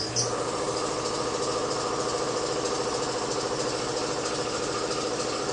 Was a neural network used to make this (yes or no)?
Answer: no